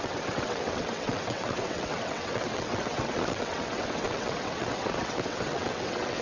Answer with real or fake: fake